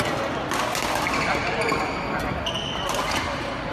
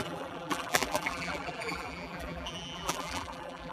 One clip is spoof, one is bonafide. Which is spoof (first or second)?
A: second